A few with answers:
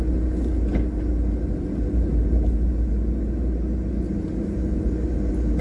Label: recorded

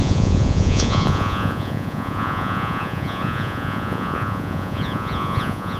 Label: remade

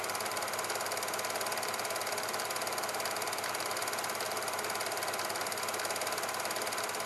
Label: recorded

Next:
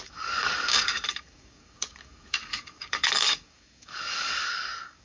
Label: remade